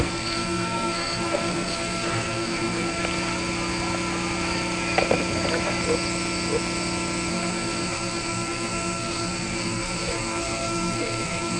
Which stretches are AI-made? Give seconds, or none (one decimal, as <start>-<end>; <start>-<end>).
0.0-3.0; 7.3-11.6